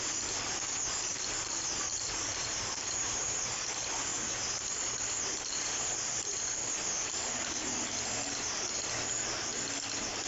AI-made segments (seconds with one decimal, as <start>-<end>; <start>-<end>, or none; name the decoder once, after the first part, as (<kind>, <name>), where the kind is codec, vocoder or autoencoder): 1.1-3.6 (vocoder, BigVGAN v2); 4.1-7.8